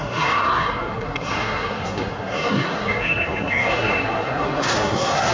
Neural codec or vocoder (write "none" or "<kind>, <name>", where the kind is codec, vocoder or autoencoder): codec, SNAC